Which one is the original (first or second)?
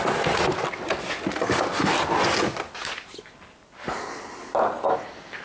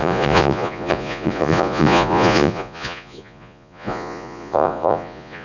first